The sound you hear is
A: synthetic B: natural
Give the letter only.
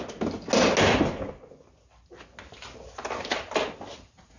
B